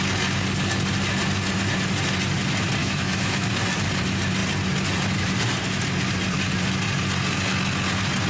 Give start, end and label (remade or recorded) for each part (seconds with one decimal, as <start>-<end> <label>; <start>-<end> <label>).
0.0-2.8 recorded; 2.8-3.5 remade; 3.5-8.3 recorded